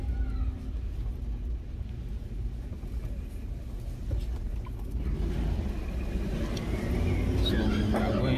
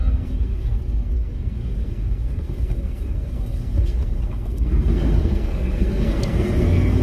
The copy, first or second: second